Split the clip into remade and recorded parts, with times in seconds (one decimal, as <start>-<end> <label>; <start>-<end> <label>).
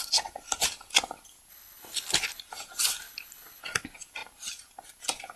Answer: 0.0-1.5 recorded; 1.5-2.4 remade; 2.4-3.0 recorded; 3.0-3.6 remade; 3.6-5.4 recorded